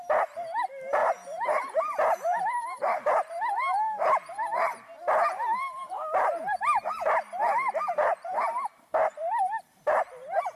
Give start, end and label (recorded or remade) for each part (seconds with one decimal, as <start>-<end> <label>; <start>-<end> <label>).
0.0-4.7 remade; 4.7-5.3 recorded; 5.3-10.6 remade

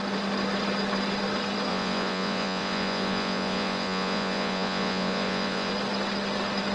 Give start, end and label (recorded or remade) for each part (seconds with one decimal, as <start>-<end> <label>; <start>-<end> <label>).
0.0-1.7 recorded; 1.7-5.7 remade; 5.7-6.7 recorded

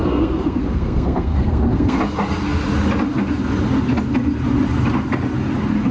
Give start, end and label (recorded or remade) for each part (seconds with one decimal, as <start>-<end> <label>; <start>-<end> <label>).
0.0-2.0 remade; 2.0-5.9 recorded

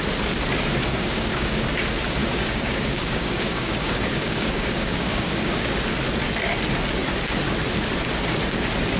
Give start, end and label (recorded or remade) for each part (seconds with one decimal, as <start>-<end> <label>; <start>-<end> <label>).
0.0-0.9 recorded; 0.9-1.6 remade; 1.6-2.2 recorded; 2.2-5.7 remade; 5.7-9.0 recorded

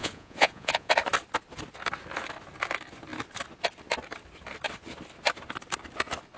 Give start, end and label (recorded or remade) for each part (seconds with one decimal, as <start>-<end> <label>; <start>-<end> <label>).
0.0-0.9 remade; 0.9-6.4 recorded

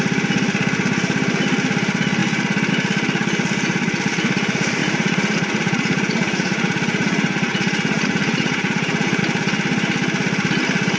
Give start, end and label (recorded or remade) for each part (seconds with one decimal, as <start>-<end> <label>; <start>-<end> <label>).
0.0-4.8 recorded; 4.8-9.2 remade; 9.2-11.0 recorded